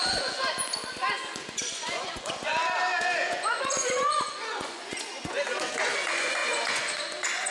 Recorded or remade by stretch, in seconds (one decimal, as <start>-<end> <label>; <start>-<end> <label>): 0.0-2.5 remade; 2.5-3.0 recorded; 3.0-7.5 remade